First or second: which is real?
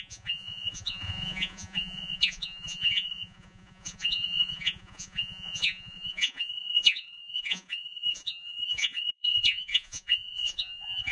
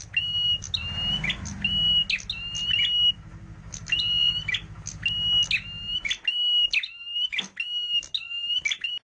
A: second